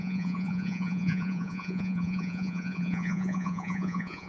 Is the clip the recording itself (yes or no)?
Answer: no